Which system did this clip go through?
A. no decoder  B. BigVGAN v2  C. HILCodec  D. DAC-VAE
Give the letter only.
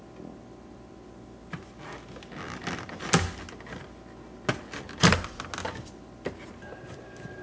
A